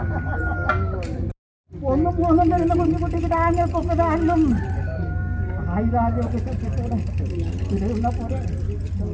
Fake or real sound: real